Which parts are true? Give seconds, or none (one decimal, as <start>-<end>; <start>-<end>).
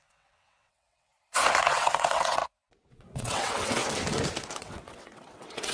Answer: 1.1-1.7; 2.4-2.9; 3.8-4.6